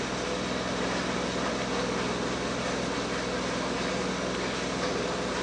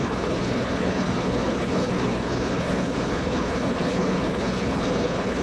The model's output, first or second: second